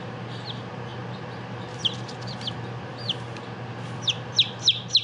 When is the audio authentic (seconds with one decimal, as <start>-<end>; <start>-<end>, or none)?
0.0-5.0